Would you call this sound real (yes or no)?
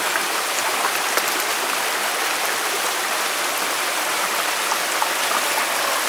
yes